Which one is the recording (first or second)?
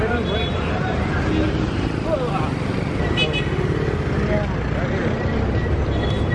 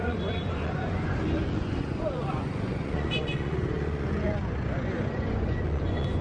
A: first